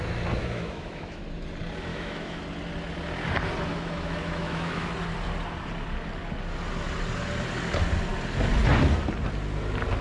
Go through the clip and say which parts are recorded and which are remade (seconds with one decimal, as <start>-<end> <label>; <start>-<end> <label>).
0.0-0.4 recorded; 0.4-1.2 remade; 1.2-1.9 recorded; 1.9-2.4 remade; 2.4-3.7 recorded; 3.7-4.9 remade; 4.9-10.0 recorded